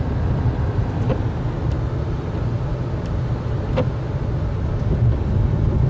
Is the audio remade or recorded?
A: recorded